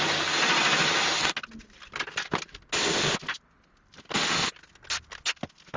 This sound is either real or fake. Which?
real